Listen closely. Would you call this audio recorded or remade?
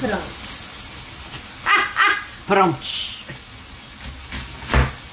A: recorded